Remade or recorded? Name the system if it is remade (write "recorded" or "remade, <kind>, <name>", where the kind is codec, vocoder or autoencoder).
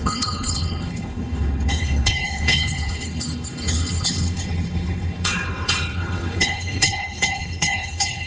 remade, codec, HILCodec